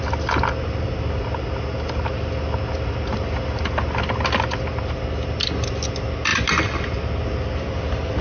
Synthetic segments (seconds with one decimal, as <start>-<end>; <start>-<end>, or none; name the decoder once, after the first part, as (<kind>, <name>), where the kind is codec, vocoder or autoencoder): none